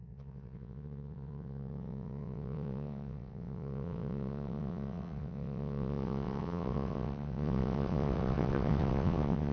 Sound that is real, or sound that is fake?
fake